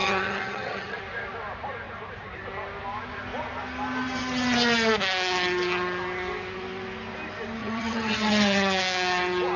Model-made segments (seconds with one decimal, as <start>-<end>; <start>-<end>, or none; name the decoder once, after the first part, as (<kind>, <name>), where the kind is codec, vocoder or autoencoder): 0.0-1.0 (vocoder, HiFi-GAN); 7.6-8.8

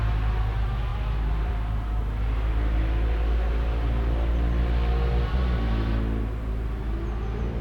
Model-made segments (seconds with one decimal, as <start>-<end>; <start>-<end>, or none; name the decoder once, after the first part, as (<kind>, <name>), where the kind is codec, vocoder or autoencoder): 0.9-1.5 (vocoder, BigVGAN v2)